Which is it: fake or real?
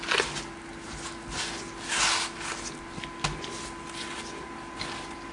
real